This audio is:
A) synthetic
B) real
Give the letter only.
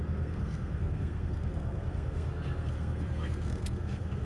A